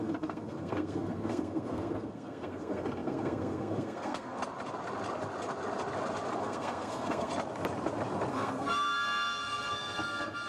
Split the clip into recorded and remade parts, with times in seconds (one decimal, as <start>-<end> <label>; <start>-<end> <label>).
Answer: 0.0-4.4 remade; 4.4-6.4 recorded; 6.4-7.3 remade; 7.3-8.3 recorded; 8.3-10.5 remade